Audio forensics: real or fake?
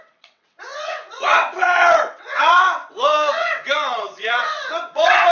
fake